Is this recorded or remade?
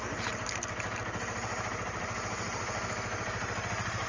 recorded